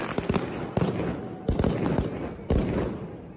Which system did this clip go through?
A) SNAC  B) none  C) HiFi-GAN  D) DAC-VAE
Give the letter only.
B